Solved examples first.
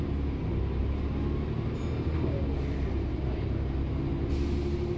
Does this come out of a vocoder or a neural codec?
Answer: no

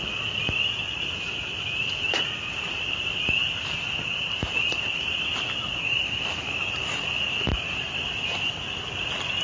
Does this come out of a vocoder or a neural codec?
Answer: no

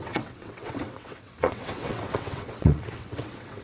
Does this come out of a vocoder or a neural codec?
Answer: yes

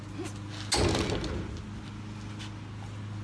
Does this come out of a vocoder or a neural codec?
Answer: no